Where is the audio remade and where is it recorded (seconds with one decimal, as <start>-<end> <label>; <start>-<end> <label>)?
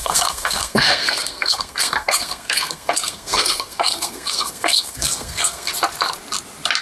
0.0-5.7 remade; 5.7-6.8 recorded